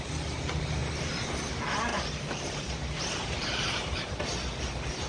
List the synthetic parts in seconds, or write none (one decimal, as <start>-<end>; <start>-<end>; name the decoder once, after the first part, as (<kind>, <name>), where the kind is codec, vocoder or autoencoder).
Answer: 1.9-4.2 (vocoder, BigVGAN v2)